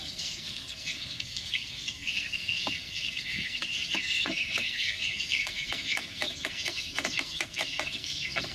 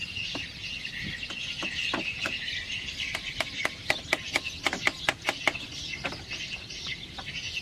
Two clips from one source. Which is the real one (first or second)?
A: second